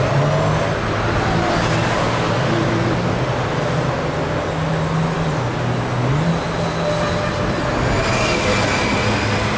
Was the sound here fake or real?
real